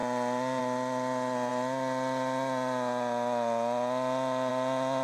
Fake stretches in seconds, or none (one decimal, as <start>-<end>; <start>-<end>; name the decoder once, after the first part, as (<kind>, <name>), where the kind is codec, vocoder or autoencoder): none